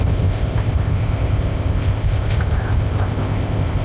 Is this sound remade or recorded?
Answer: remade